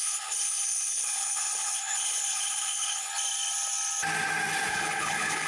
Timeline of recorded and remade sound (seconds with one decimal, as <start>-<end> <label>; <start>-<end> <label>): 0.0-3.1 remade; 3.1-4.7 recorded; 4.7-5.5 remade